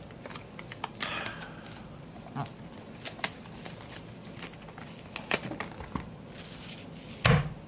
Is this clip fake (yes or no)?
no